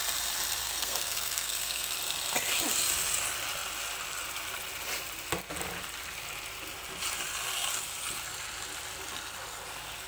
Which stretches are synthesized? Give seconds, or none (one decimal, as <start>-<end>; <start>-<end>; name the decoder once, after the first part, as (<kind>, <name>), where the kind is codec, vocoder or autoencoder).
0.6-1.9 (codec, SNAC)